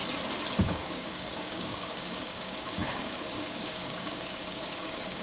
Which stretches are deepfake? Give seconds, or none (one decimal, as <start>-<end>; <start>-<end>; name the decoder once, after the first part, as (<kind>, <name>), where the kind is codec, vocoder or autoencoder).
0.6-5.2 (codec, DAC)